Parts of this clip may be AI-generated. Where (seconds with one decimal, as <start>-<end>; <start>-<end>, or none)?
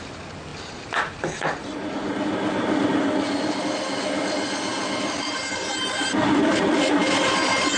none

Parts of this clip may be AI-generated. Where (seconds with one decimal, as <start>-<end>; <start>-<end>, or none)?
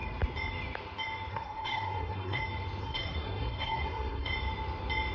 1.3-2.4; 2.8-4.3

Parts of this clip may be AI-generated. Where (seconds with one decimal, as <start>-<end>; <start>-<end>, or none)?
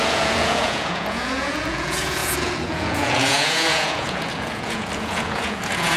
0.0-6.0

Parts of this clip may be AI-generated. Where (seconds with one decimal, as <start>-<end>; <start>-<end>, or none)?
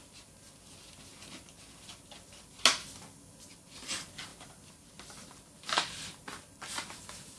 4.3-5.3